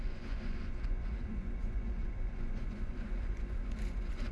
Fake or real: fake